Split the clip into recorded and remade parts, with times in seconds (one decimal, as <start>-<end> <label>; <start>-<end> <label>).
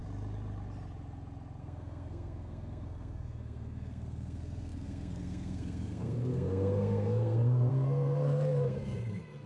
0.0-1.6 recorded; 1.6-9.5 remade